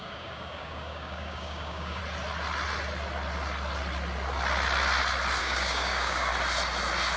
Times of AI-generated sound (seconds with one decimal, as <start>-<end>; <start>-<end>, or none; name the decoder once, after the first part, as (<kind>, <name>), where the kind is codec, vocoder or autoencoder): 0.0-2.0 (codec, DAC); 5.4-6.3